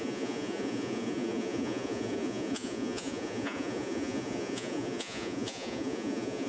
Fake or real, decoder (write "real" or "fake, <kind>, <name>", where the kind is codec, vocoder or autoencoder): fake, vocoder, Vocos